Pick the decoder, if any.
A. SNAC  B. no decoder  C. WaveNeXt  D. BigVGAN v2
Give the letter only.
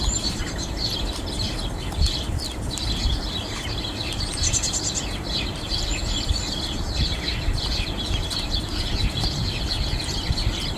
D